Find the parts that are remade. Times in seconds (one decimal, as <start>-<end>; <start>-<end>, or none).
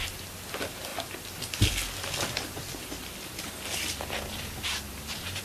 none